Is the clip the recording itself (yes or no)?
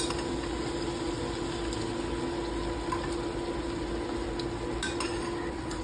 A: yes